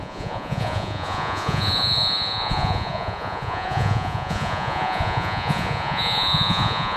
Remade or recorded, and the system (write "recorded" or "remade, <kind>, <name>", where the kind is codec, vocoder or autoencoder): remade, vocoder, Vocos